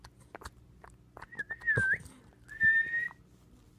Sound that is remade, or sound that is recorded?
recorded